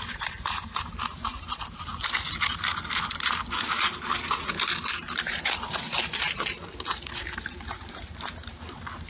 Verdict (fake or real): fake